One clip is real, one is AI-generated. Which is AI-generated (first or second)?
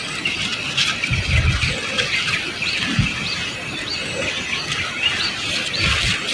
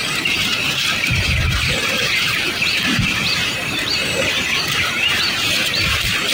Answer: second